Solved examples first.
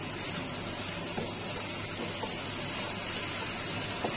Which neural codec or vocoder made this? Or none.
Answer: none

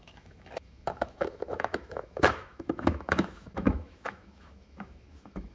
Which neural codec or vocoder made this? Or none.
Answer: autoencoder, DAC-VAE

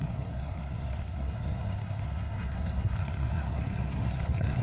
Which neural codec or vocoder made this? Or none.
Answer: codec, SNAC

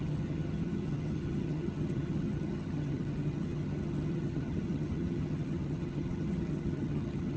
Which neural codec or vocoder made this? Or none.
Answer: vocoder, HiFi-GAN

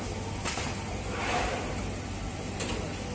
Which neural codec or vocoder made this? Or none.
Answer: none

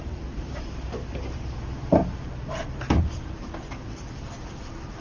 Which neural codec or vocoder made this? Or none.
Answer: vocoder, BigVGAN v2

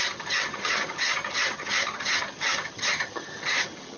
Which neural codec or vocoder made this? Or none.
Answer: vocoder, HiFi-GAN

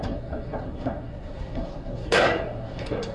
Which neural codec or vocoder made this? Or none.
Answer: codec, SNAC